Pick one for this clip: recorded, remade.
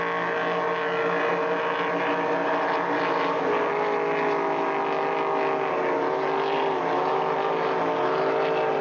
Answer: recorded